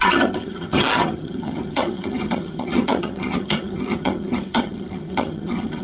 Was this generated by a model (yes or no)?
yes